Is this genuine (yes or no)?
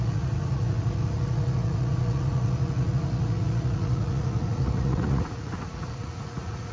no